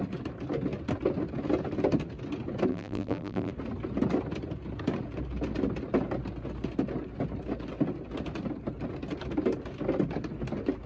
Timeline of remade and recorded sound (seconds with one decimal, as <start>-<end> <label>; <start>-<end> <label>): 0.0-2.7 recorded; 2.7-3.5 remade; 3.5-10.9 recorded